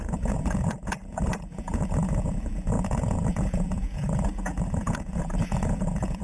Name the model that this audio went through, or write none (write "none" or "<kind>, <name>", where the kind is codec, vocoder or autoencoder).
vocoder, Vocos